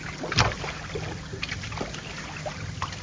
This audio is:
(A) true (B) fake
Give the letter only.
A